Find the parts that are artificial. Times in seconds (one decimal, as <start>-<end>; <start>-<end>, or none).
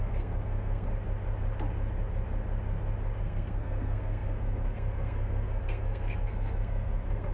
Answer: 0.0-0.9; 3.2-7.3